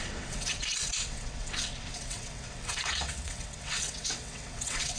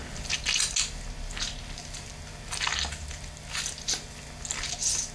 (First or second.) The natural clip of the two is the second